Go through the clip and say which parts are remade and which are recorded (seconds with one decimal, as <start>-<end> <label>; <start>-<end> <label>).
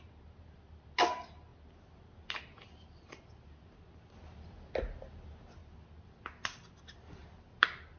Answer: 0.0-8.0 recorded